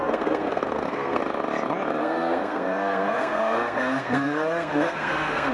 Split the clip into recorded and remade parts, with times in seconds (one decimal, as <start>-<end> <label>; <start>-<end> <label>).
0.0-1.2 remade; 1.2-2.0 recorded; 2.0-5.5 remade